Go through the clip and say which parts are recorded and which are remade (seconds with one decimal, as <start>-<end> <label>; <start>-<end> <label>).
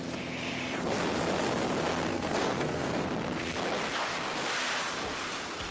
0.0-2.1 recorded; 2.1-3.1 remade; 3.1-5.7 recorded